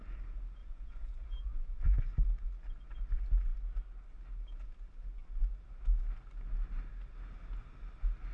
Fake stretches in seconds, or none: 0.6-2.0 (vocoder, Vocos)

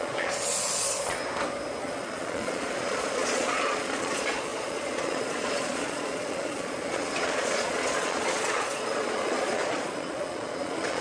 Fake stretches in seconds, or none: 0.0-1.2 (vocoder, Vocos); 1.8-11.0

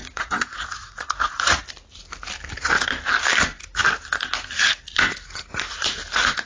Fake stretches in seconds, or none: 0.0-1.7 (vocoder, Vocos)

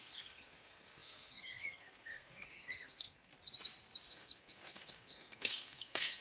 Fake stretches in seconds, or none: 0.0-3.3 (codec, SNAC); 4.1-6.2

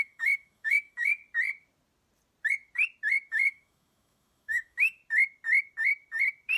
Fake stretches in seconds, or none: 0.0-1.2 (autoencoder, DAC-VAE); 3.3-5.0

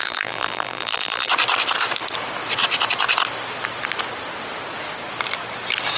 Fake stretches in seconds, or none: 0.0-1.3 (vocoder, BigVGAN v2)

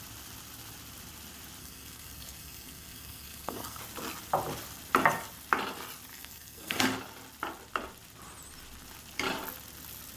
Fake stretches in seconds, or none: 1.6-3.8 (codec, SNAC); 6.1-6.8